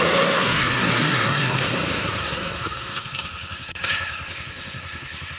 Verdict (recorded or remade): remade